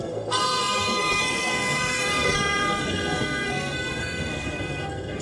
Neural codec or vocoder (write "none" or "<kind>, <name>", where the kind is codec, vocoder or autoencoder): codec, SNAC